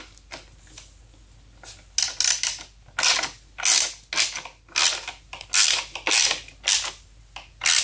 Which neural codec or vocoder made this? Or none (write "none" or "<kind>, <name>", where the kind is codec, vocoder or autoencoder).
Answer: none